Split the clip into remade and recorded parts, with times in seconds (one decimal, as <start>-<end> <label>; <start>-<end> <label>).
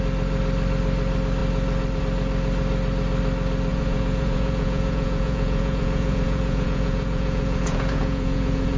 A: 0.0-3.7 recorded; 3.7-8.8 remade